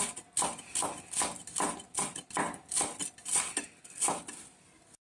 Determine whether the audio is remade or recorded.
recorded